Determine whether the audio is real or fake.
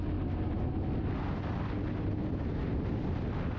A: real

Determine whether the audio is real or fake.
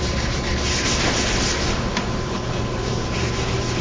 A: real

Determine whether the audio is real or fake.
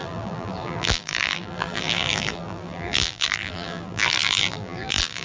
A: fake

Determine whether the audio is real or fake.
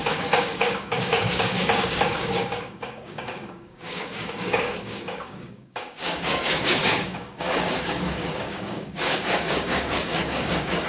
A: fake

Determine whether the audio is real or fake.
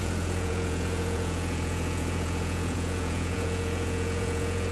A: fake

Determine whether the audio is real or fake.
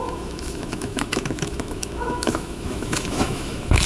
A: fake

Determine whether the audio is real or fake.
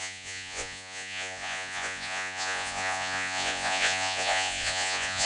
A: fake